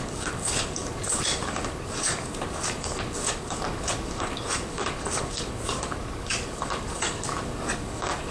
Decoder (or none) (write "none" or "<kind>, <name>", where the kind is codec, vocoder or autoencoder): codec, DAC